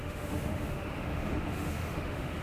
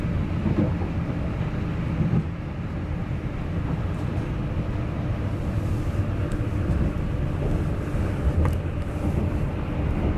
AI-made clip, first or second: first